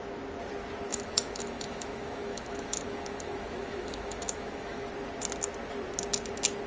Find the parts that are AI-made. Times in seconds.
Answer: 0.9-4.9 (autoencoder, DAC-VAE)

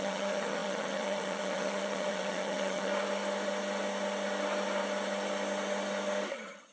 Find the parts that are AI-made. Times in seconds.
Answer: 0.0-2.9 (vocoder, HiFi-GAN); 6.3-6.7